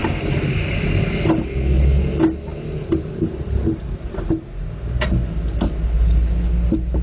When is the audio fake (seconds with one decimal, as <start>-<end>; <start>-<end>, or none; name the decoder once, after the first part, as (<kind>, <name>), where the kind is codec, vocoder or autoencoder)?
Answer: none